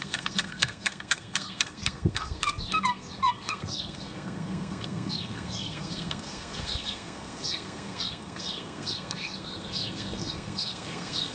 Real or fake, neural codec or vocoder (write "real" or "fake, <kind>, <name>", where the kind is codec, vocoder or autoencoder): fake, codec, SNAC